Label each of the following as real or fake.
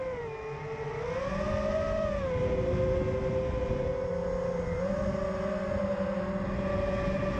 real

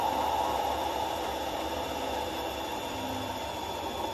fake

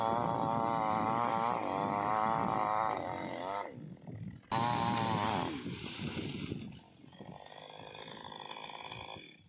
real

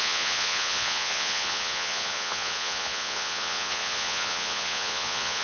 fake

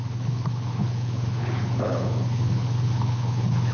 fake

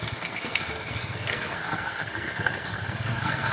fake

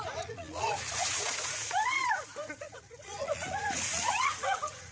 fake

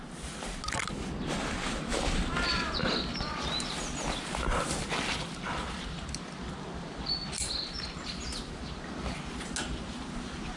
real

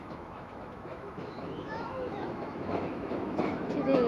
fake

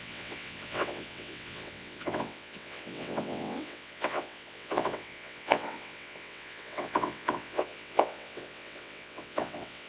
fake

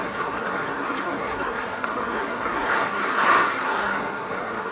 fake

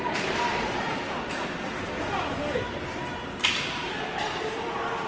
real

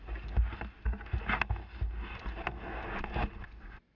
real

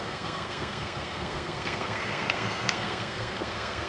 fake